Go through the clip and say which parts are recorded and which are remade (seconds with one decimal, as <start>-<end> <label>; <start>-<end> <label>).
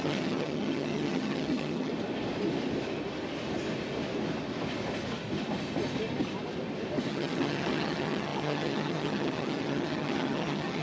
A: 0.0-1.9 remade; 1.9-7.1 recorded; 7.1-10.8 remade